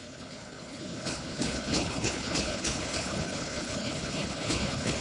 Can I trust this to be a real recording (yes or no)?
no